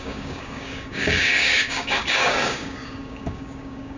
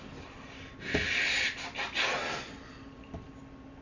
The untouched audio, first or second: second